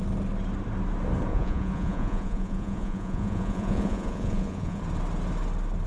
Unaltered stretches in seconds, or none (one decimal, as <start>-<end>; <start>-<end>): 0.0-1.3; 4.8-5.9